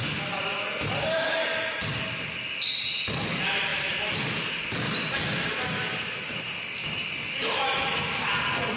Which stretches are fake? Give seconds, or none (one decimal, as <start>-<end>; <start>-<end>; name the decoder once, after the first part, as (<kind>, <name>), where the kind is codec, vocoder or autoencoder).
none